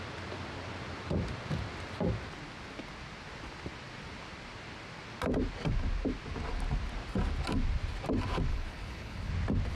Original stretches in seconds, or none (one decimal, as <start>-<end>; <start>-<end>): 0.0-8.5; 9.3-9.8